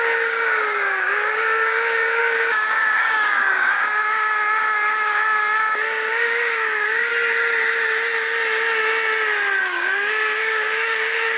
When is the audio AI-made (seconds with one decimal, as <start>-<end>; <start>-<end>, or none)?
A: 0.0-7.1; 9.6-11.4